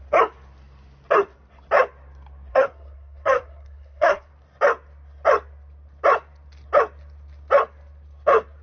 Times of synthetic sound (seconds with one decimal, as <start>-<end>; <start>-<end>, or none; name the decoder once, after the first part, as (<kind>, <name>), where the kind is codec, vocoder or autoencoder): 2.5-4.3 (codec, SNAC)